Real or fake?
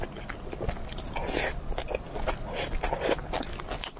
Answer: real